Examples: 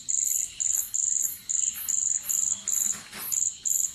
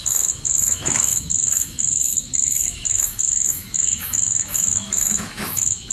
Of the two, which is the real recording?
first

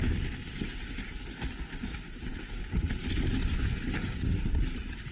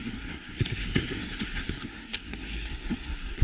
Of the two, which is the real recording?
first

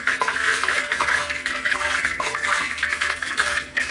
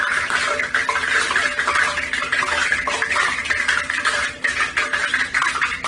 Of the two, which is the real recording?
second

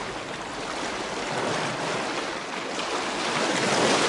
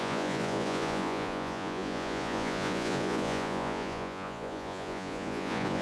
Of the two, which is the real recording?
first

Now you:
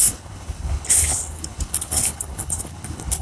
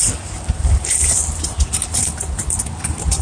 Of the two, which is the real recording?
second